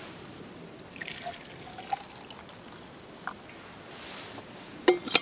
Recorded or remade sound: recorded